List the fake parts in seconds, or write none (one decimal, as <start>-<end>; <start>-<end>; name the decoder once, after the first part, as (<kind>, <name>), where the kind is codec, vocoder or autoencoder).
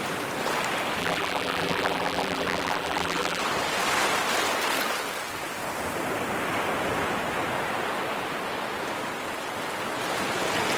1.0-3.4 (vocoder, BigVGAN v2)